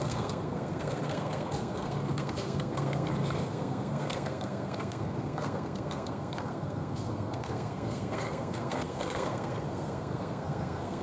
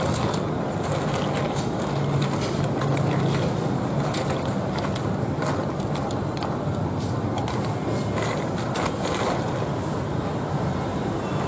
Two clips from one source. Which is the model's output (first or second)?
first